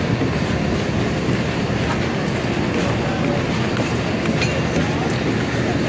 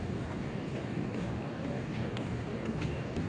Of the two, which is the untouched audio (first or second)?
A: first